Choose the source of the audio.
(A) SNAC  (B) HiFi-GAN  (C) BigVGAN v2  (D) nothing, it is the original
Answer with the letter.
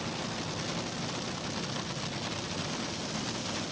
D